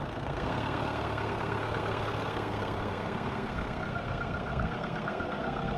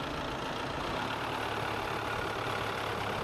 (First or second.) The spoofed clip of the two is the first